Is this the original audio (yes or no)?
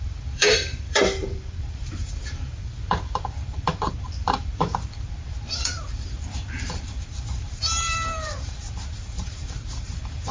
no